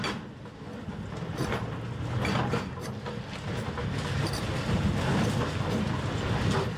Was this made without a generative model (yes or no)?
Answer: yes